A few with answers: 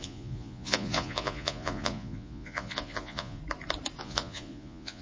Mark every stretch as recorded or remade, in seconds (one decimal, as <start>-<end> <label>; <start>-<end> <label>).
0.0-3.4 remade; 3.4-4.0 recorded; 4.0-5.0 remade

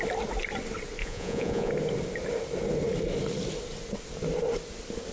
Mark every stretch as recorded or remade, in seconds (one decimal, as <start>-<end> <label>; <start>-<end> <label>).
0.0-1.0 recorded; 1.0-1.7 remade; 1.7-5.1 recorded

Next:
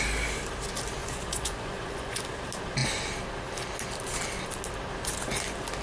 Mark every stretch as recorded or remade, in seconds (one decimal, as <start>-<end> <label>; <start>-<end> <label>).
0.0-1.0 recorded; 1.0-2.2 remade; 2.2-5.8 recorded

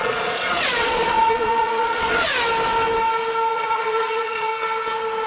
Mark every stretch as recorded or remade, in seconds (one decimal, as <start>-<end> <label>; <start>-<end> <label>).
0.0-2.3 remade; 2.3-3.5 recorded; 3.5-4.5 remade; 4.5-5.3 recorded